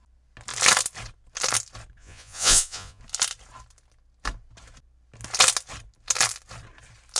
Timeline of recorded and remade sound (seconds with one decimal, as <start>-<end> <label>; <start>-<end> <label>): 0.0-2.0 recorded; 2.0-3.0 remade; 3.0-7.2 recorded